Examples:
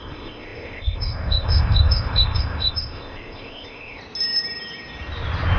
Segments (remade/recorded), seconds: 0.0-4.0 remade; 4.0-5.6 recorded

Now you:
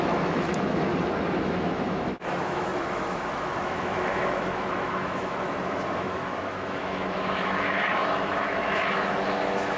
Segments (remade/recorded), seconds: 0.0-0.9 remade; 0.9-1.4 recorded; 1.4-9.8 remade

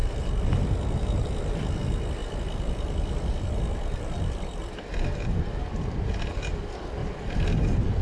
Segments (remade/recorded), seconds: 0.0-7.0 recorded; 7.0-8.0 remade

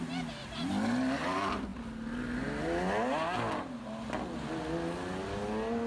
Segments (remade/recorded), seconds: 0.0-5.9 recorded

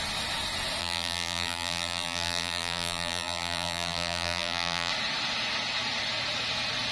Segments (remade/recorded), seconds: 0.0-0.8 recorded; 0.8-4.9 remade; 4.9-6.9 recorded

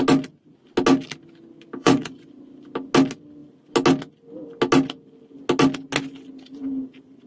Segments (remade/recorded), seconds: 0.0-1.8 recorded; 1.8-2.3 remade; 2.3-7.3 recorded

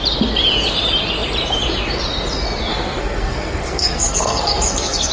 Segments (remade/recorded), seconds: 0.0-2.7 recorded; 2.7-5.1 remade

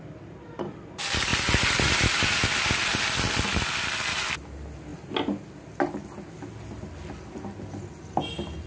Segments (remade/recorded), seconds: 0.0-8.7 recorded